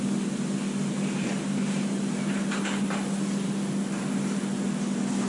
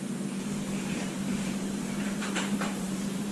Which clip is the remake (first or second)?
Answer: second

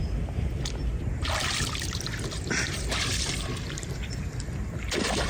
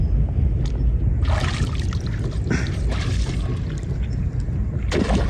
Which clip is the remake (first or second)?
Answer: first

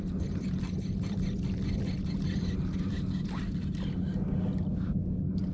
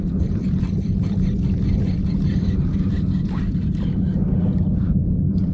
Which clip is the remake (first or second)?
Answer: second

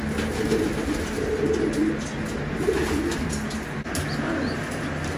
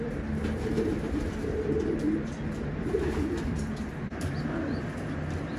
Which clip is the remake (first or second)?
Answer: second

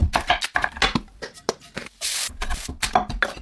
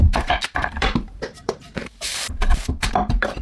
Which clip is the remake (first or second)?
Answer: second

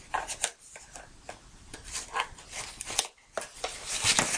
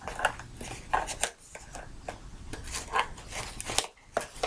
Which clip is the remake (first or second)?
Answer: first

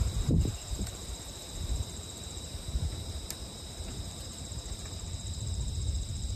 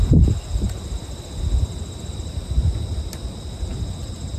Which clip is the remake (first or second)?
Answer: first